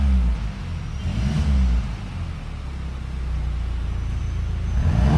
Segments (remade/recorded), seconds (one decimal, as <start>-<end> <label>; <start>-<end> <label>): 0.0-5.2 recorded